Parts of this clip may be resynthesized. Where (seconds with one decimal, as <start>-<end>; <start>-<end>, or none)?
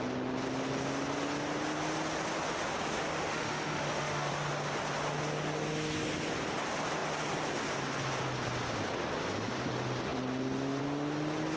3.1-4.3